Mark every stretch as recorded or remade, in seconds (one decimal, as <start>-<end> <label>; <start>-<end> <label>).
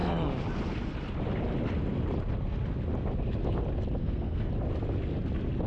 0.0-4.0 recorded; 4.0-4.5 remade; 4.5-5.7 recorded